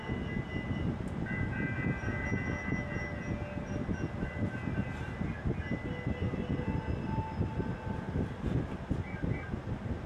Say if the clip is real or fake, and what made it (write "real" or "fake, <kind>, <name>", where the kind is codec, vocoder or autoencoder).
real